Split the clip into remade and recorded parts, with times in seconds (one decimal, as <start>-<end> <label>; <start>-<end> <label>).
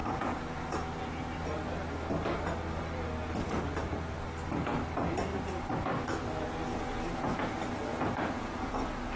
0.0-1.2 remade; 1.2-6.7 recorded; 6.7-7.4 remade; 7.4-7.9 recorded; 7.9-8.7 remade; 8.7-9.2 recorded